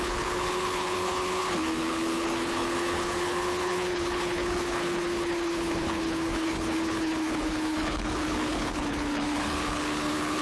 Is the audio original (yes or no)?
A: no